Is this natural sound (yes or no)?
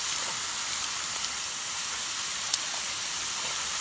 yes